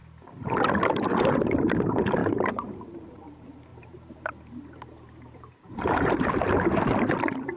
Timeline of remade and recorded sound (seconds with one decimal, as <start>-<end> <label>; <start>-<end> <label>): 0.0-2.2 recorded; 2.2-3.2 remade; 3.2-3.7 recorded; 3.7-6.3 remade; 6.3-7.6 recorded